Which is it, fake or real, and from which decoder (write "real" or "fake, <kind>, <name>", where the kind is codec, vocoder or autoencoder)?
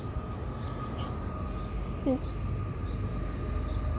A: real